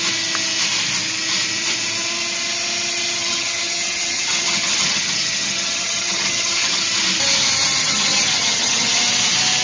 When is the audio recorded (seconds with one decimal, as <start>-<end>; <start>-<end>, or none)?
0.0-3.2; 6.8-7.8; 9.0-9.6